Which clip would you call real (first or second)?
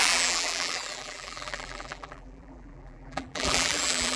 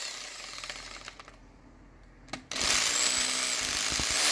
second